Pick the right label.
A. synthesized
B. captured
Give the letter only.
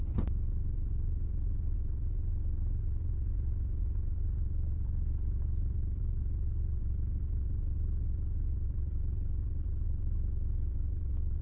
A